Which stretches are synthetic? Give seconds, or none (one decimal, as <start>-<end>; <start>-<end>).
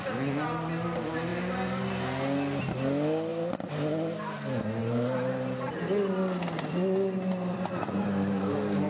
4.8-5.7